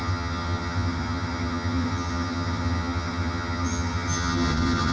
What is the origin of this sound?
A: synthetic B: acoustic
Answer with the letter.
A